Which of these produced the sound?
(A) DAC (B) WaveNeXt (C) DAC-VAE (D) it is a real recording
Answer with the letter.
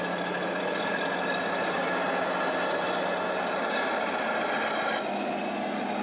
D